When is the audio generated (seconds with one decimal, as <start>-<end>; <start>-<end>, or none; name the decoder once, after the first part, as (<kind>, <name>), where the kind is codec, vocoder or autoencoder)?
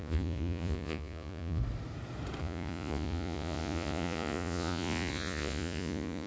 0.0-1.6 (vocoder, Vocos); 2.4-6.3